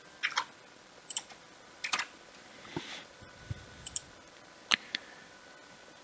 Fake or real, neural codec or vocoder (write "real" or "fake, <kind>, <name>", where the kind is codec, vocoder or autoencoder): real